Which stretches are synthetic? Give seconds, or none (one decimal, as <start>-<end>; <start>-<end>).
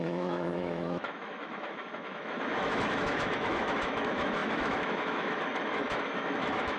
0.0-6.8